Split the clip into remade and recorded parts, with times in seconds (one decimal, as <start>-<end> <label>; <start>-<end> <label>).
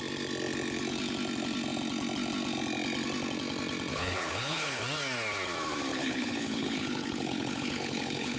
0.0-3.9 recorded; 3.9-4.8 remade; 4.8-5.9 recorded; 5.9-8.4 remade